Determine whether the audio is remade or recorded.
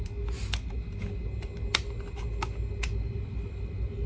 recorded